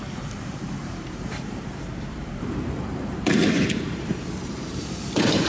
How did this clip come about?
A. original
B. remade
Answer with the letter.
B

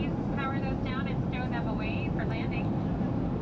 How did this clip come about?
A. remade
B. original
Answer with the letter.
B